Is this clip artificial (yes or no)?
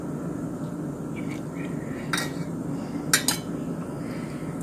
no